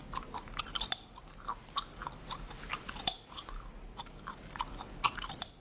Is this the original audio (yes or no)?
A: yes